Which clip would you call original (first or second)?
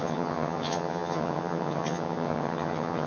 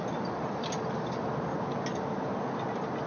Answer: second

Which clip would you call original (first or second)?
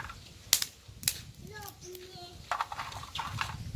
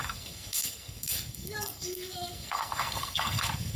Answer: first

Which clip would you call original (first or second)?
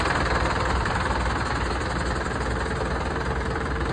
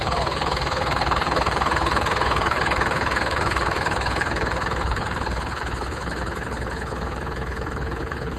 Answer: first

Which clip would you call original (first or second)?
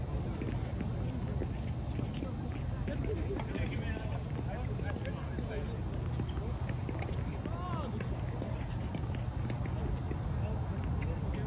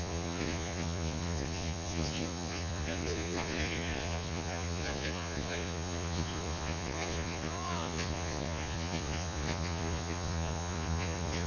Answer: first